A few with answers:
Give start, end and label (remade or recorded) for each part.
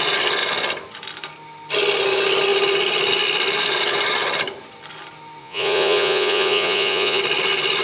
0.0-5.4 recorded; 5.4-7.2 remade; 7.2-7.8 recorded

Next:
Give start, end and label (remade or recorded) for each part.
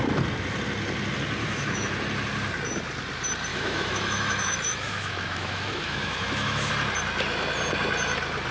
0.0-1.4 recorded; 1.4-1.9 remade; 1.9-3.5 recorded; 3.5-6.7 remade; 6.7-8.5 recorded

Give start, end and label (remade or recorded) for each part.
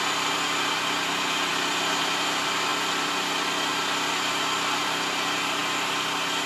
0.0-6.5 recorded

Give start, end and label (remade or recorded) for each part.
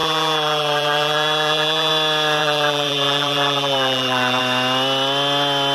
0.0-1.9 remade; 1.9-2.4 recorded; 2.4-4.4 remade; 4.4-5.7 recorded